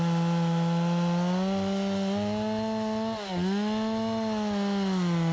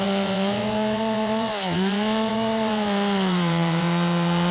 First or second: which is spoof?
second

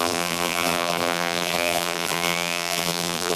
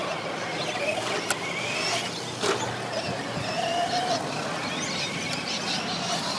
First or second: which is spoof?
first